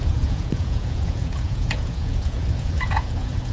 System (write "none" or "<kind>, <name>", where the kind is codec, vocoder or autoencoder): vocoder, Vocos